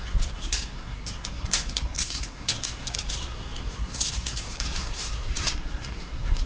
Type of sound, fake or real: fake